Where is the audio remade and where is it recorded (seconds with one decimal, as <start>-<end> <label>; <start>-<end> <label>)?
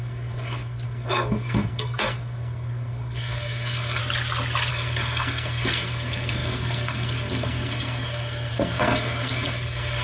0.0-4.0 remade; 4.0-4.7 recorded; 4.7-10.0 remade